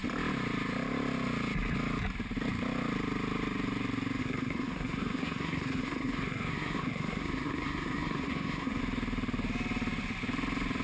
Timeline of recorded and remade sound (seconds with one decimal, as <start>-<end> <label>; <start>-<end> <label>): 0.0-4.2 recorded; 4.2-8.8 remade; 8.8-10.8 recorded